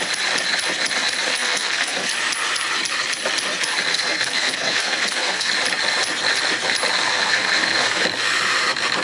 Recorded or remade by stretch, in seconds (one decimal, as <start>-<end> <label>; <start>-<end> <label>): 0.0-1.3 recorded; 1.3-2.1 remade; 2.1-3.9 recorded; 3.9-5.5 remade; 5.5-7.1 recorded; 7.1-8.0 remade; 8.0-9.0 recorded